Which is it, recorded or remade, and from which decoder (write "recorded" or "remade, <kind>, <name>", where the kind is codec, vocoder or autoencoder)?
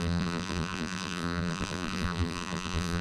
remade, vocoder, BigVGAN v2